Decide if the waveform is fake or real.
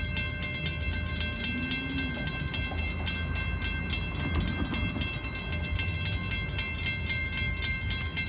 real